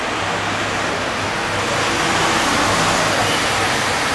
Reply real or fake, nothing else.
real